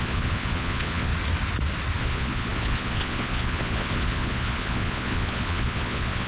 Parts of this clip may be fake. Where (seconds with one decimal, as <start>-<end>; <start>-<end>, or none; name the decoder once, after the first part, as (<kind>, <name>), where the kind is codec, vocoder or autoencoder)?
0.0-1.1 (vocoder, Vocos); 2.0-6.3